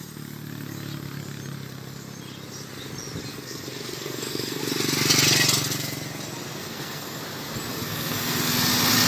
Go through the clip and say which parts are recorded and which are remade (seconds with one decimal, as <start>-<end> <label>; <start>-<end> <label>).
0.0-3.3 recorded; 3.3-4.6 remade; 4.6-6.6 recorded; 6.6-7.2 remade; 7.2-7.7 recorded; 7.7-8.5 remade; 8.5-9.1 recorded